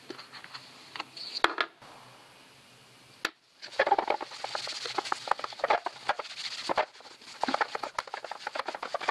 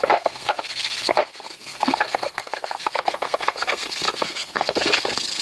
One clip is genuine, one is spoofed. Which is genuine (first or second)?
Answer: first